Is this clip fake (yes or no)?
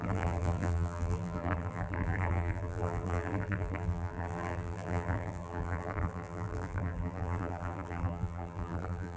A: yes